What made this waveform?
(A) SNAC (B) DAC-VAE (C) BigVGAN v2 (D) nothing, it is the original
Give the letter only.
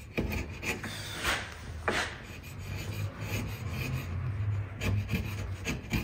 D